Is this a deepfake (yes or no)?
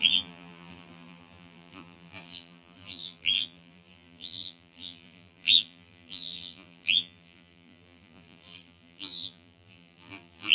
yes